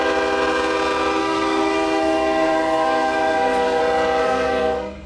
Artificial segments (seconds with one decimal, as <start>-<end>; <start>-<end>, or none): 1.2-3.8; 4.2-5.1